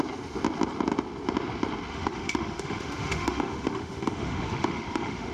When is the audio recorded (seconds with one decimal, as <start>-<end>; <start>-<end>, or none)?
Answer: 0.0-1.9